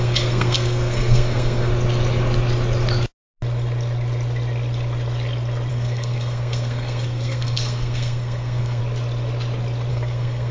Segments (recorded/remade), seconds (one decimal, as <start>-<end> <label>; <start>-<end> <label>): 0.0-1.7 remade; 1.7-5.7 recorded; 5.7-8.8 remade; 8.8-9.9 recorded; 9.9-10.5 remade